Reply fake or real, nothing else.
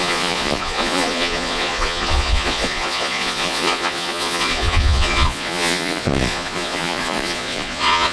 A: fake